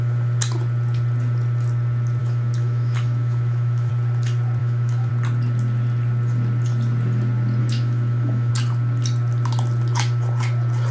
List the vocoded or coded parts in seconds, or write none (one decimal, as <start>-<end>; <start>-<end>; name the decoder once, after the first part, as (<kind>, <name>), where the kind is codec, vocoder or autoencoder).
2.2-3.9 (autoencoder, DAC-VAE); 4.6-5.1; 7.6-8.5